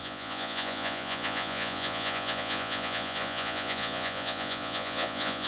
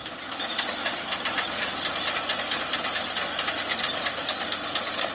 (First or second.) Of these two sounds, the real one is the second